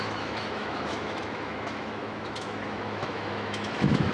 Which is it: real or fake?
fake